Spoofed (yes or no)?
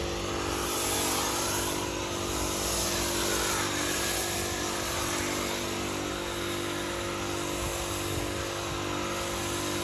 no